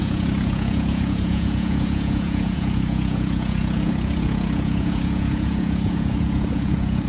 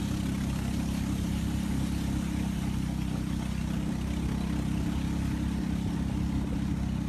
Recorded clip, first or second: second